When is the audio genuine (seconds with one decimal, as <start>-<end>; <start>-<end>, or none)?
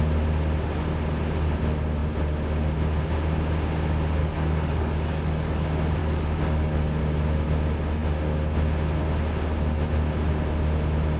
0.0-4.2; 5.6-6.0; 7.0-11.2